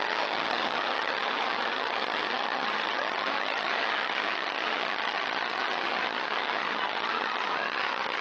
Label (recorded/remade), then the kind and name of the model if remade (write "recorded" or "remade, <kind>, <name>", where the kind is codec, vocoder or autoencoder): remade, vocoder, HiFi-GAN